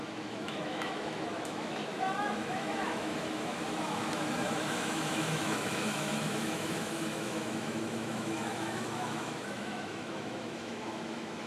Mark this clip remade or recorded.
remade